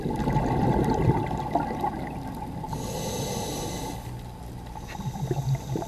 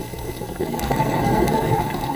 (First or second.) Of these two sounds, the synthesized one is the second